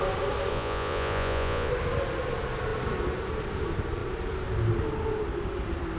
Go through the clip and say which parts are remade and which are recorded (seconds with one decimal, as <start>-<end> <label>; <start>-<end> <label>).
0.0-0.5 recorded; 0.5-1.7 remade; 1.7-6.0 recorded